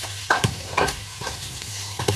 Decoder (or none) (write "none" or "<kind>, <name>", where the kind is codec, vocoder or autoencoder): codec, SNAC